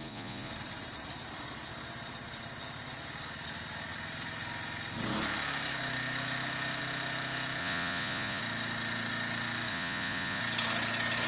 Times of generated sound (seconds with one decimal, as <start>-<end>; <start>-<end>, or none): 0.0-0.5; 7.6-8.4; 9.7-10.4